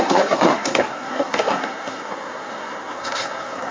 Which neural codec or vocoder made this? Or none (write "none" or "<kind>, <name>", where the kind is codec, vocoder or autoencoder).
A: codec, SNAC